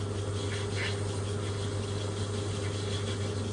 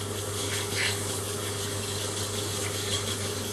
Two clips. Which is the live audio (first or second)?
first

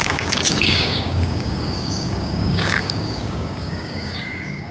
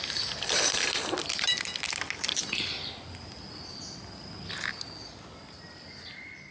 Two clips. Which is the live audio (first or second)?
second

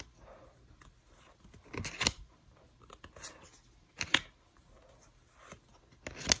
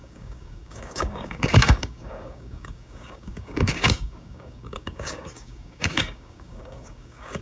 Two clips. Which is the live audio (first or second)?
first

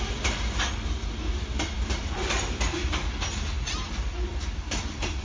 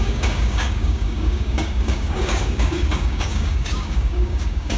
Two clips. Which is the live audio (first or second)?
first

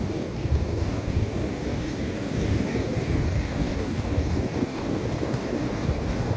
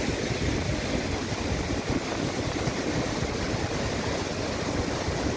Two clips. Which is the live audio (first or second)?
second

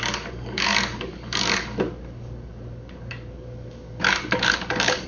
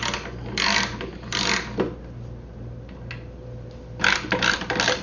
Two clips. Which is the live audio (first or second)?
second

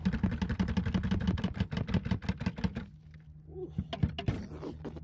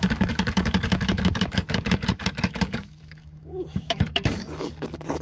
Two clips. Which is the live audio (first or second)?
first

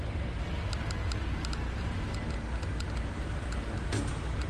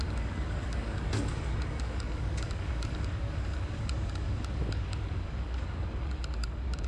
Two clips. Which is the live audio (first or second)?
first